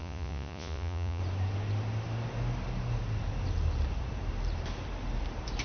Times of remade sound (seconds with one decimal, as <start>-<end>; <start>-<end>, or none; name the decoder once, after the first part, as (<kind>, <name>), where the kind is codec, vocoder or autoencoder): 0.0-1.2 (vocoder, Vocos)